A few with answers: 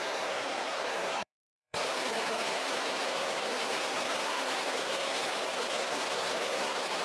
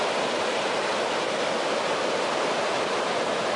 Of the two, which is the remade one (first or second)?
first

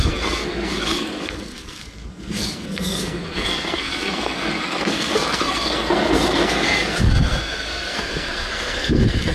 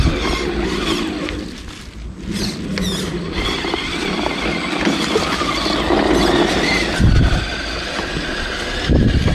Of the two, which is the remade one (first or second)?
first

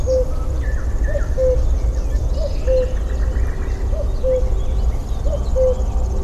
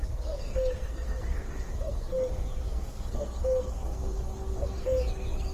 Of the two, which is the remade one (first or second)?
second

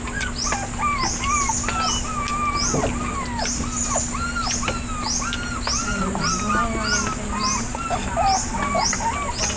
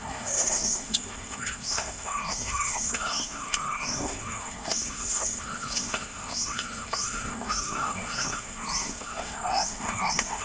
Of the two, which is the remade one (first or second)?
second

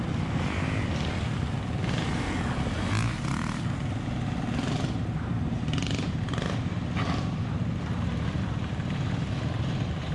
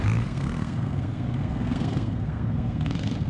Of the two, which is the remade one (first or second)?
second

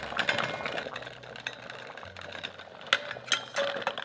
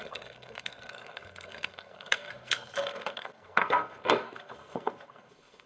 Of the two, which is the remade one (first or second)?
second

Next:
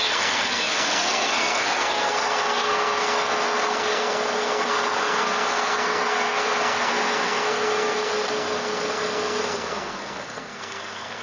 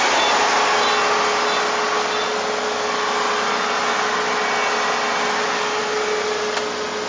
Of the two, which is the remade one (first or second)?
first